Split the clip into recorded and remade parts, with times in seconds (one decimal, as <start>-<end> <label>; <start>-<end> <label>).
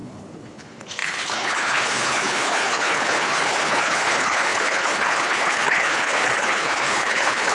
0.0-7.5 remade